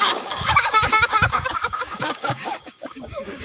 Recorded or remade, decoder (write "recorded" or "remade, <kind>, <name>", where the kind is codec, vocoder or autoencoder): remade, codec, DAC